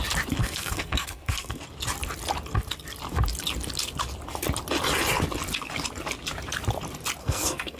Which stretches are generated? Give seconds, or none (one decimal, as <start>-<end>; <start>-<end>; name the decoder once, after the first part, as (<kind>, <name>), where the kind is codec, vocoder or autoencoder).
0.4-1.6 (codec, SNAC); 7.2-7.8